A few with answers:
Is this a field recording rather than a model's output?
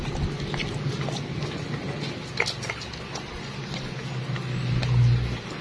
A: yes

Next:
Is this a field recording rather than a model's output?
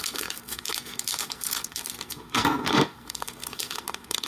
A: no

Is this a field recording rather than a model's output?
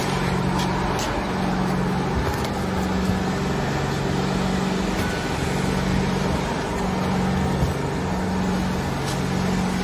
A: yes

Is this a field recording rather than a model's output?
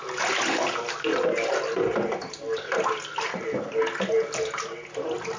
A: yes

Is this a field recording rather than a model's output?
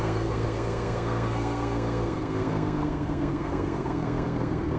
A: no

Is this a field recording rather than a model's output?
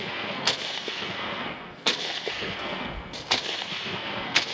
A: no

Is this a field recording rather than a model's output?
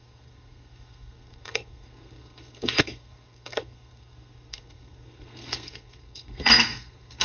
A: no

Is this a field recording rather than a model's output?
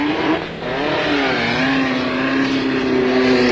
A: yes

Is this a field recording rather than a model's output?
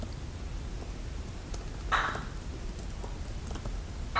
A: yes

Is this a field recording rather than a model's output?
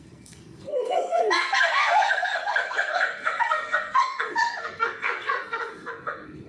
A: no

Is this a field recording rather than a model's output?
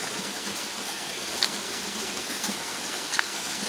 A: no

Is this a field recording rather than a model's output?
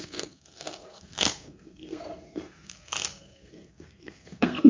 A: no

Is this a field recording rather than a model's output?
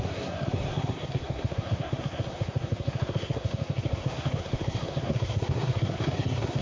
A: no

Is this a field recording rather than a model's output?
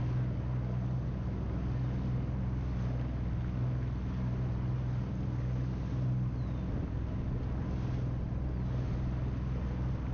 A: yes